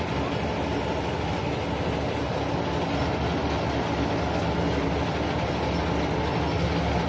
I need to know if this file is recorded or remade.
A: recorded